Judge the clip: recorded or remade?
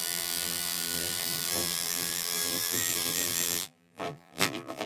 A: remade